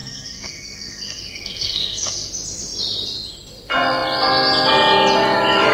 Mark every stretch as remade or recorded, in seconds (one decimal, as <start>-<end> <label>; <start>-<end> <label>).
0.0-2.3 remade; 2.3-5.7 recorded